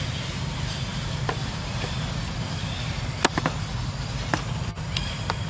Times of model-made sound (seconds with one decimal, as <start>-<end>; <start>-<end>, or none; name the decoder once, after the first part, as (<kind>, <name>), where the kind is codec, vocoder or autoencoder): none